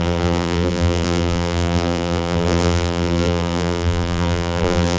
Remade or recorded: remade